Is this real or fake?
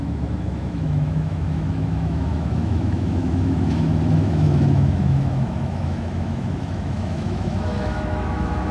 fake